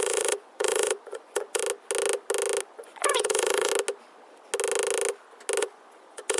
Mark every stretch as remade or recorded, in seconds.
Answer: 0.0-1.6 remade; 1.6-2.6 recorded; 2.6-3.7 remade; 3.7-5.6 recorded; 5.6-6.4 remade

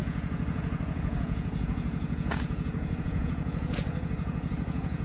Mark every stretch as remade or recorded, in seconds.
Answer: 0.0-5.0 remade